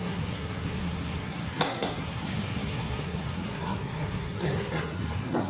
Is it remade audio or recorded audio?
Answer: remade